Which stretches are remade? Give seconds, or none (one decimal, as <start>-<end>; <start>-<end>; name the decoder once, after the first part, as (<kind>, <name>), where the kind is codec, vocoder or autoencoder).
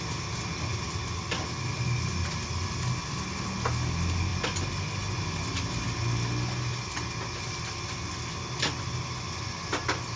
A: none